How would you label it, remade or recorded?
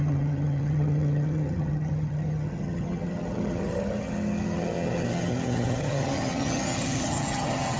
remade